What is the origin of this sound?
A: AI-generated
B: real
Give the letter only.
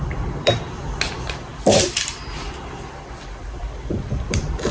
A